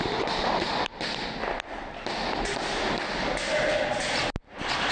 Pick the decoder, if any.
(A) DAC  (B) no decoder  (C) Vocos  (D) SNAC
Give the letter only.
B